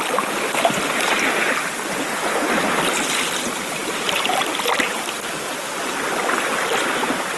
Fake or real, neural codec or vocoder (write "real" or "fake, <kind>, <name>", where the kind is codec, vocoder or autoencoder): real